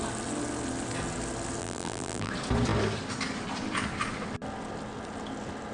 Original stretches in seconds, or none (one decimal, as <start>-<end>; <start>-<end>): 0.0-1.6; 2.3-5.7